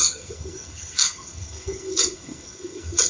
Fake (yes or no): yes